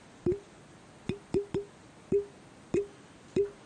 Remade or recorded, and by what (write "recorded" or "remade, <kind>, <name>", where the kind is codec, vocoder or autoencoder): recorded